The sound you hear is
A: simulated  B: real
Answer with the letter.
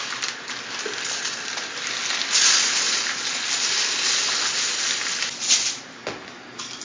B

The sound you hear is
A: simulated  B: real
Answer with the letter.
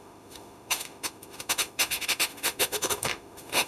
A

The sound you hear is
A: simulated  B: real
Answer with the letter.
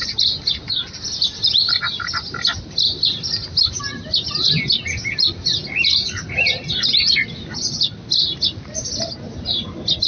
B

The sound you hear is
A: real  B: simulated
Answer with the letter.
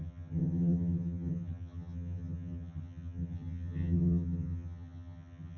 B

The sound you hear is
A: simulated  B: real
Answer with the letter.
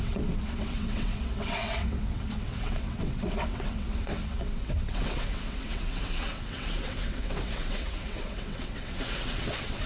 A